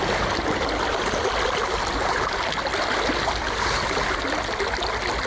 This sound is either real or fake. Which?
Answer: real